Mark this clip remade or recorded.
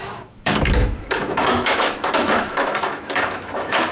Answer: remade